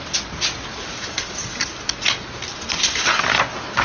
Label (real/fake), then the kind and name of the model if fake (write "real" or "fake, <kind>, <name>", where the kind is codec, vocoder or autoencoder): real